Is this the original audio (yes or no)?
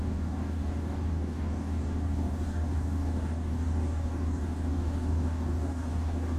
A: no